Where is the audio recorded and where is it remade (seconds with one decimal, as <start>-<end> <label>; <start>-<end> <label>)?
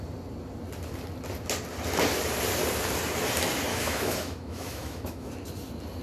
0.0-3.7 recorded; 3.7-5.3 remade; 5.3-6.0 recorded